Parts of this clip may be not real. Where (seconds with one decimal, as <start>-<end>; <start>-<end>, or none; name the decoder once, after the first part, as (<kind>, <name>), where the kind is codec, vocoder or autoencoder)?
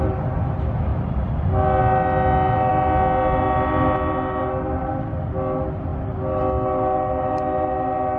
none